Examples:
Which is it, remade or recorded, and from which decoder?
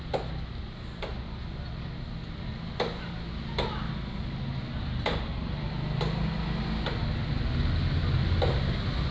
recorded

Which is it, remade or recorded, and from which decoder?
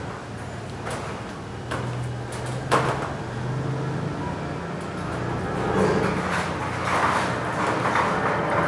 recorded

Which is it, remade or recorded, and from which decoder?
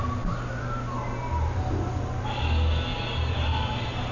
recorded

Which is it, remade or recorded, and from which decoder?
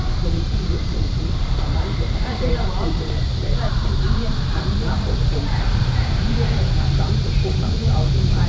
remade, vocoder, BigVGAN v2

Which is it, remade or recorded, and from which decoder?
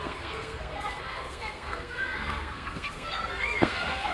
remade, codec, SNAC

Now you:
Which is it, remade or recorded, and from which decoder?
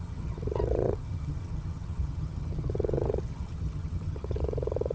remade, vocoder, HiFi-GAN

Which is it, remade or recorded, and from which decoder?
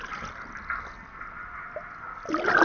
recorded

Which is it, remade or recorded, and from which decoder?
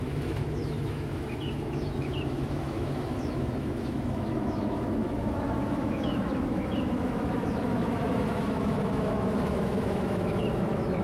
remade, autoencoder, DAC-VAE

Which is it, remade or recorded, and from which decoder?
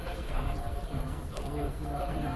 remade, codec, SNAC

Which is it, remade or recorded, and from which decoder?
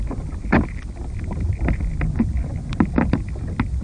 recorded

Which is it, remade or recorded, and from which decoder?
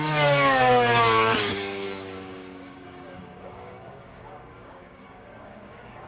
remade, codec, DAC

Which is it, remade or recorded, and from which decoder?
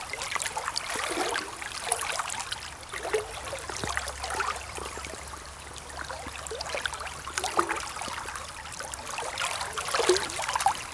recorded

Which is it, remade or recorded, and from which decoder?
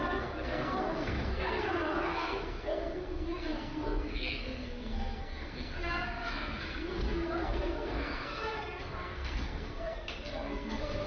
remade, codec, SNAC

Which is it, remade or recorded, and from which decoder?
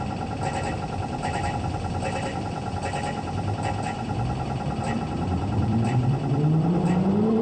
remade, vocoder, BigVGAN v2